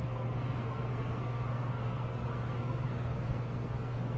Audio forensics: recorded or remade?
remade